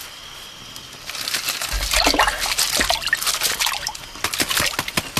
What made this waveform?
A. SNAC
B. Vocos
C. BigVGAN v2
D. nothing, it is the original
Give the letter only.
D